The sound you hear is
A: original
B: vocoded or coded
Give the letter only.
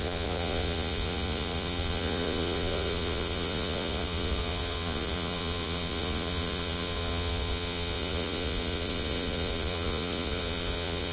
B